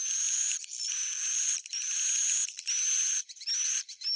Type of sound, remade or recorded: recorded